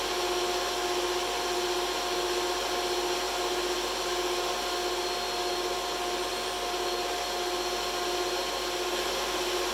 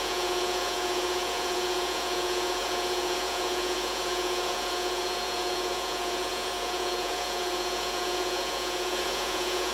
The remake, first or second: second